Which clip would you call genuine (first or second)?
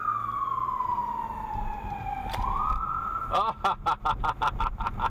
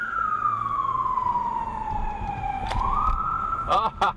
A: first